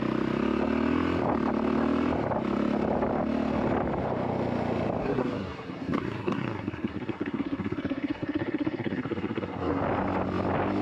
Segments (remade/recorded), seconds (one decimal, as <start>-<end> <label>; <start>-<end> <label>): 0.0-5.0 recorded; 5.0-9.8 remade; 9.8-10.8 recorded